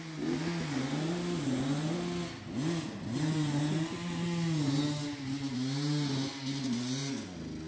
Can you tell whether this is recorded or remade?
recorded